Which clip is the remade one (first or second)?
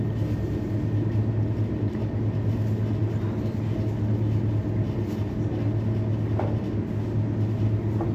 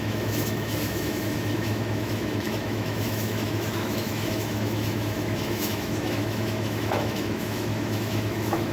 second